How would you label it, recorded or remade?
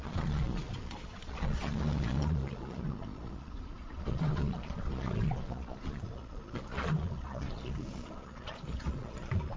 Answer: remade